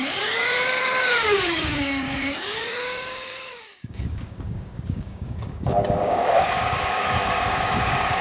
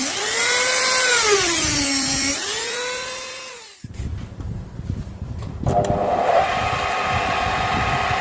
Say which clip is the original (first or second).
second